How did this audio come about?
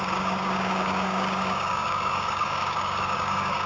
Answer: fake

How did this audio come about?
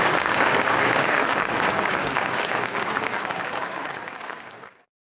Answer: fake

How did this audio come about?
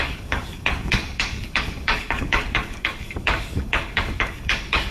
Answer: fake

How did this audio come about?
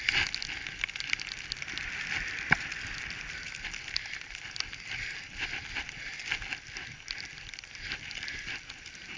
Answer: real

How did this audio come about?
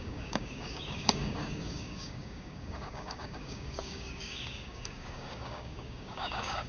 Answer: fake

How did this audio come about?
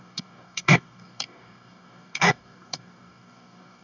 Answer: fake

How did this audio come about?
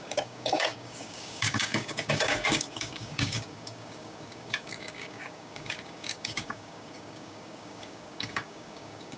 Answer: fake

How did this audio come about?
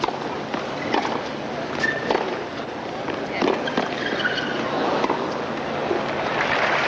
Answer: real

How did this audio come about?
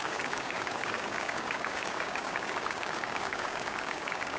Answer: fake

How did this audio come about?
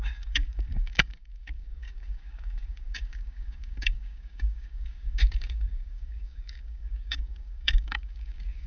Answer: fake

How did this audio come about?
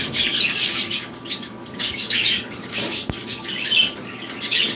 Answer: fake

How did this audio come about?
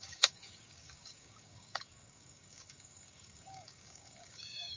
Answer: fake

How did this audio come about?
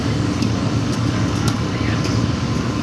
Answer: fake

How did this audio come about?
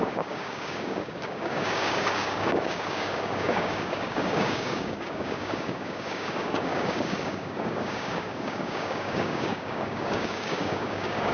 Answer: fake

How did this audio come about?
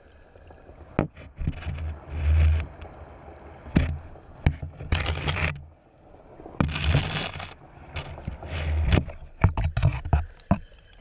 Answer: real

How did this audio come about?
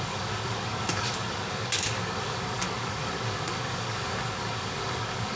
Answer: fake